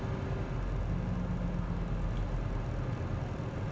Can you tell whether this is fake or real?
real